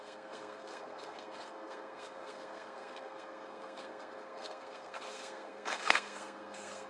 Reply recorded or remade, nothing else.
remade